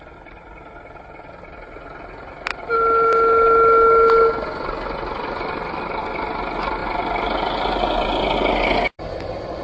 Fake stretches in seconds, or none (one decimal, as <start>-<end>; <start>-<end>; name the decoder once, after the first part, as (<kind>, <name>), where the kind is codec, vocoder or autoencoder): none